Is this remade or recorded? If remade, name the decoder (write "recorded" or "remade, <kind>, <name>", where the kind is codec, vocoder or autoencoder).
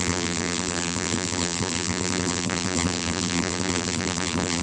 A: remade, vocoder, BigVGAN v2